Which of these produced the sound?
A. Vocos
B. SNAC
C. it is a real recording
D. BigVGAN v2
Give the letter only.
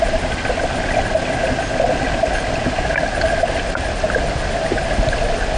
C